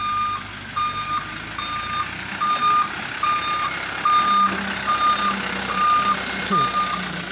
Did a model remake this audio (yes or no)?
no